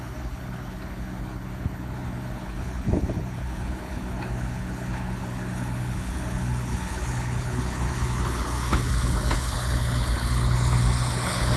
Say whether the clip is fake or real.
fake